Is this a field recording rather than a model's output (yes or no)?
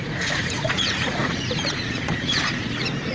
no